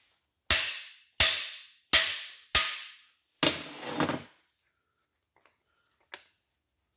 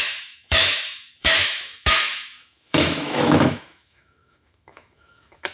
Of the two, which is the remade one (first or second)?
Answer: second